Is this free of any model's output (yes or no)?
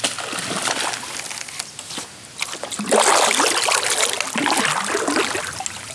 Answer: yes